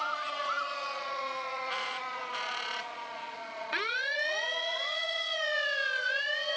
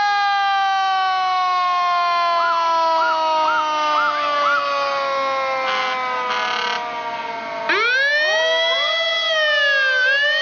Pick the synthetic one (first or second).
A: first